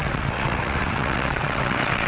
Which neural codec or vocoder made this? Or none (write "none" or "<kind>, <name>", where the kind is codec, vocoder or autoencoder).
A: vocoder, WaveNeXt